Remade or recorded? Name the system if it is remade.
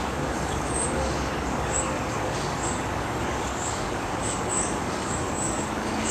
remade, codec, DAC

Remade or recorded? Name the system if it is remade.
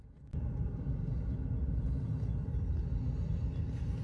recorded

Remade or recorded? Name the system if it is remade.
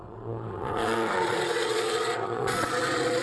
remade, vocoder, Vocos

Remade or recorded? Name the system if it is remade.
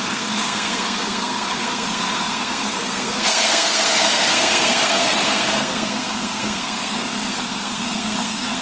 remade, codec, SNAC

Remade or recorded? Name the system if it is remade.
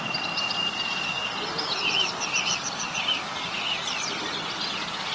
recorded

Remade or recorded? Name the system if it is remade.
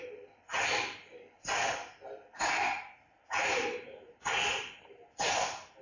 remade, vocoder, BigVGAN v2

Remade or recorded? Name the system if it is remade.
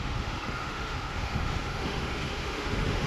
remade, autoencoder, DAC-VAE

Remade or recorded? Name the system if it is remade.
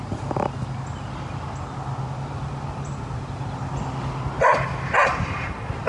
recorded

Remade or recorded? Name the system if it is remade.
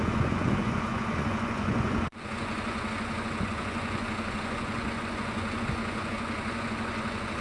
remade, vocoder, Vocos